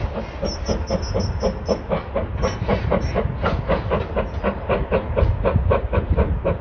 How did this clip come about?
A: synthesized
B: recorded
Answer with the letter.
B